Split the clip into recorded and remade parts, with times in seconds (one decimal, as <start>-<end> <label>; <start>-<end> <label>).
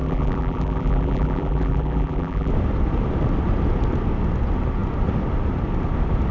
0.0-2.5 remade; 2.5-6.3 recorded